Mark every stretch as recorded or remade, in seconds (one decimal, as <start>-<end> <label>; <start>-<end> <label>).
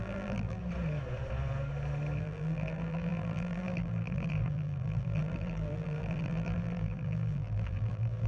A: 0.0-0.6 remade; 0.6-2.2 recorded; 2.2-8.3 remade